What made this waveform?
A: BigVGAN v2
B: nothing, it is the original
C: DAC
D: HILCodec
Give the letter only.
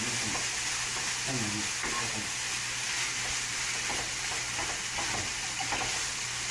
B